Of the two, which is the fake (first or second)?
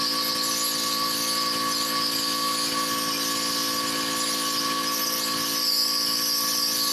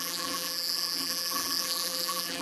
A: second